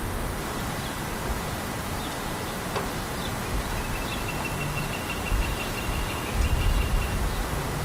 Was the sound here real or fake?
real